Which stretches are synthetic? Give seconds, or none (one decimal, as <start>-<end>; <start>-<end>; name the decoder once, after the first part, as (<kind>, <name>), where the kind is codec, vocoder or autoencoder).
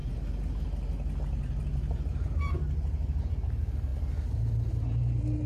none